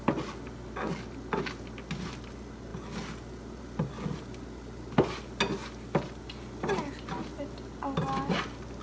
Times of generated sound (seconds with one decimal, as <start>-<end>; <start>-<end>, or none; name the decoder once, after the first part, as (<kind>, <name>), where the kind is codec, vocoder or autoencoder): none